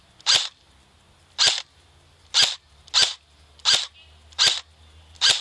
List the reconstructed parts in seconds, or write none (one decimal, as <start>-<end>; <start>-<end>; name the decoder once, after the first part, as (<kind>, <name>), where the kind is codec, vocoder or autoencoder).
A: none